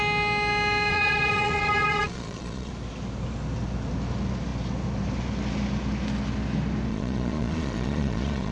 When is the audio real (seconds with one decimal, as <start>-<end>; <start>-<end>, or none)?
0.0-0.9; 2.7-6.9